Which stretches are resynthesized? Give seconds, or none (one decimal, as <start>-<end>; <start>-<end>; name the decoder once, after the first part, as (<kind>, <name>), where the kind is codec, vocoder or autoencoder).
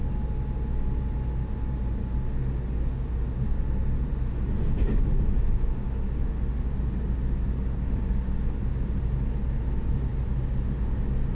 none